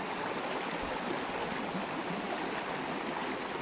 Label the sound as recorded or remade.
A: recorded